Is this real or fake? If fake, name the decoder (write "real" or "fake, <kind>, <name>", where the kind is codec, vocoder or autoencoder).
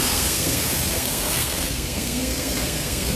fake, codec, SNAC